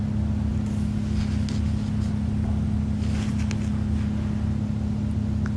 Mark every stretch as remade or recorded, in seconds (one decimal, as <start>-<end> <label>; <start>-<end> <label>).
0.0-5.6 recorded